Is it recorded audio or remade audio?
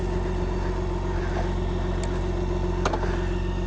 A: recorded